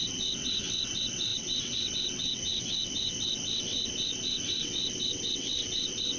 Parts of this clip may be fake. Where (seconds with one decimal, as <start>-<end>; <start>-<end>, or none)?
0.0-6.2